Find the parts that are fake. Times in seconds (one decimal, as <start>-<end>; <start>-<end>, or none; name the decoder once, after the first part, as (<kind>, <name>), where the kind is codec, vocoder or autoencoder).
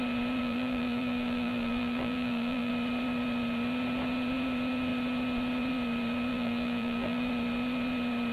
0.4-2.7 (vocoder, BigVGAN v2); 6.3-7.3